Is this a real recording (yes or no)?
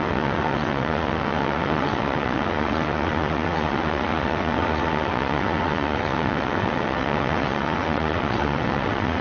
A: no